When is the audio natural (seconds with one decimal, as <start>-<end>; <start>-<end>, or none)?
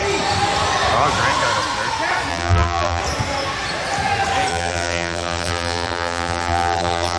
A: 0.0-2.3; 3.0-4.5